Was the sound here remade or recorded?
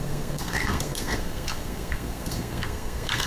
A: remade